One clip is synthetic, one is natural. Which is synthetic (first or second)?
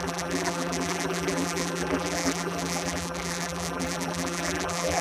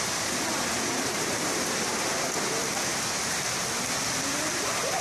first